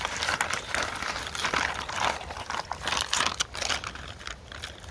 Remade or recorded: recorded